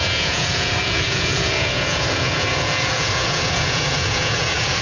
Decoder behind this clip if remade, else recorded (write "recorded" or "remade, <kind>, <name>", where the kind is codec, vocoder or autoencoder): remade, vocoder, Vocos